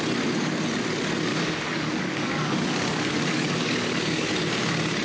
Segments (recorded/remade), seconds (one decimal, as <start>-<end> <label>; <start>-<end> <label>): 0.0-1.3 recorded; 1.3-4.3 remade; 4.3-5.0 recorded

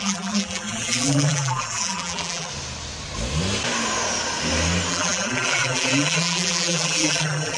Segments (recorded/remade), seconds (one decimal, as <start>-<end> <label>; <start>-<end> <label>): 0.0-2.5 remade; 2.5-4.9 recorded; 4.9-7.6 remade

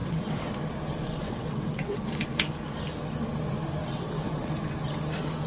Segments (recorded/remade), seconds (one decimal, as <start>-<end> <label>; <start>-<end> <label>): 0.0-0.5 remade; 0.5-1.2 recorded; 1.2-2.0 remade; 2.0-3.8 recorded; 3.8-4.5 remade; 4.5-5.5 recorded

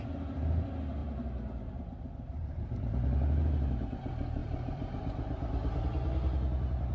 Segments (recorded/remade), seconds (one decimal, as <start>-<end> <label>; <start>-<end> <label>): 0.0-1.0 recorded; 1.0-1.7 remade; 1.7-4.4 recorded; 4.4-5.8 remade; 5.8-6.9 recorded

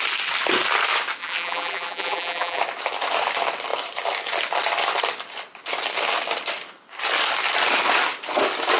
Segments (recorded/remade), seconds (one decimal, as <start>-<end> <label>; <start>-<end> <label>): 0.0-1.2 recorded; 1.2-2.6 remade; 2.6-8.8 recorded

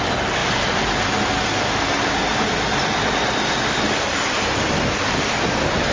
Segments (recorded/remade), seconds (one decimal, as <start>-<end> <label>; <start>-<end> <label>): 0.0-5.9 recorded

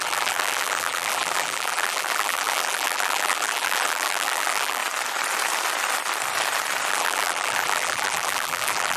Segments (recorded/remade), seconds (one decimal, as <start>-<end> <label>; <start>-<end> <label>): 0.0-4.8 remade; 4.8-6.9 recorded; 6.9-9.0 remade